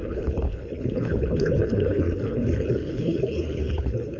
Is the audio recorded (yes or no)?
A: no